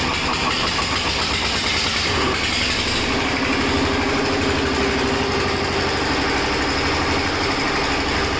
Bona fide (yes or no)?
yes